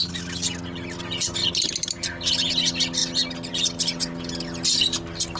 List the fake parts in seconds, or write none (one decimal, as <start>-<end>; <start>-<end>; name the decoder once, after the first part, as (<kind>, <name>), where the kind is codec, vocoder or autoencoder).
none